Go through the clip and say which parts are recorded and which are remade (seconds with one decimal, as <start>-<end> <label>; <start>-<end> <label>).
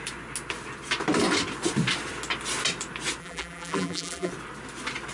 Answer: 0.0-3.2 recorded; 3.2-4.3 remade; 4.3-5.1 recorded